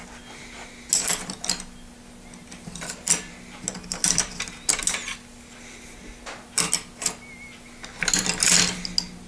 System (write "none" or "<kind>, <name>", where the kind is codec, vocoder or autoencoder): none